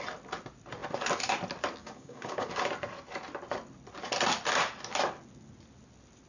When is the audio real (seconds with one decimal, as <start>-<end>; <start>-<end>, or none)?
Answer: 0.0-1.8; 2.5-6.3